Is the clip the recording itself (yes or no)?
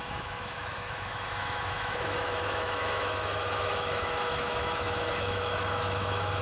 no